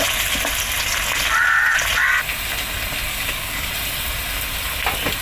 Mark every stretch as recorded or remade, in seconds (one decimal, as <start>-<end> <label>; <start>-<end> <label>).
0.0-3.1 recorded; 3.1-3.7 remade; 3.7-5.2 recorded